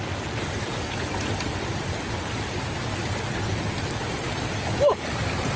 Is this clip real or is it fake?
real